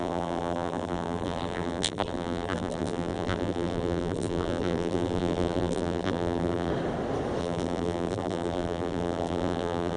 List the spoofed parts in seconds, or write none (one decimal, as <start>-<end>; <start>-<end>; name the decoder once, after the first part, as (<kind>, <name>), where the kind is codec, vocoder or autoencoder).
0.0-6.7 (vocoder, BigVGAN v2); 7.4-10.0